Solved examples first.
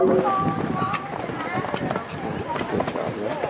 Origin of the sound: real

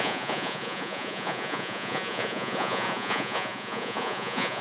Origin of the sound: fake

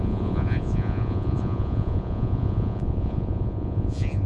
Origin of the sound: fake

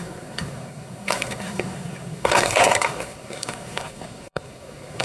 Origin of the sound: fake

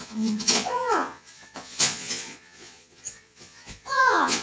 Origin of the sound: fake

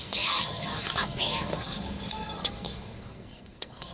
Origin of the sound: fake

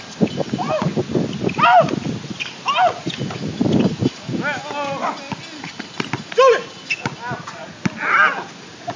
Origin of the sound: real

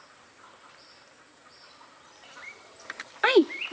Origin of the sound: fake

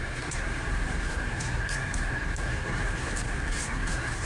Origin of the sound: fake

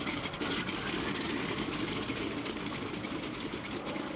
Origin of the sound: fake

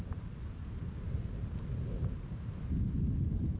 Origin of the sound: real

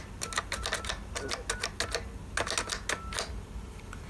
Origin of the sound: real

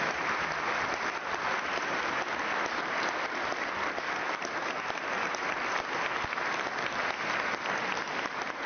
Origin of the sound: real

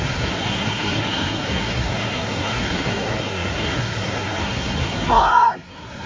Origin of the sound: fake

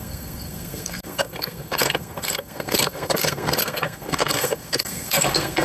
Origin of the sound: fake